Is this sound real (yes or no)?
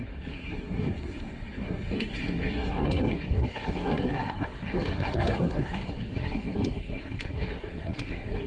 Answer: no